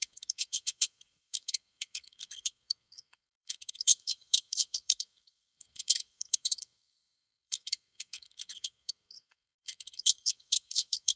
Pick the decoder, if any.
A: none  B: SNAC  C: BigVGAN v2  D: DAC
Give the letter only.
B